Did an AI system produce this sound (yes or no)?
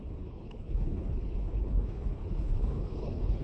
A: yes